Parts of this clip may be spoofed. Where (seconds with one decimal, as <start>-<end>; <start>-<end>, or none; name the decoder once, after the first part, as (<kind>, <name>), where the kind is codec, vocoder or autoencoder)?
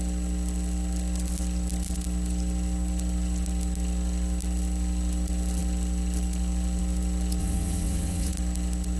7.4-8.3 (vocoder, WaveNeXt)